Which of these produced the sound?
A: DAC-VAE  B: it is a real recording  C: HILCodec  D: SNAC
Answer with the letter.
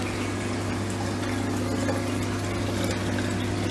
B